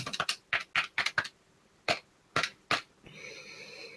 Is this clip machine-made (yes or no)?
no